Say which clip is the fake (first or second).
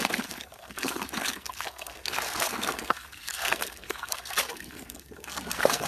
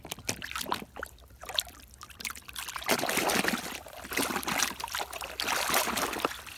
first